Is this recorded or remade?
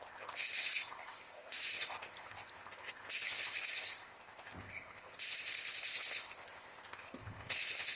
remade